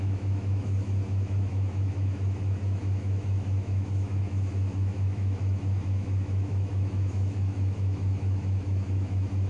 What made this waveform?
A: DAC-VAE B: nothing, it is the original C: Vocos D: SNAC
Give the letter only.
A